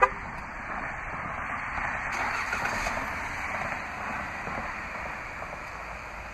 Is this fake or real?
real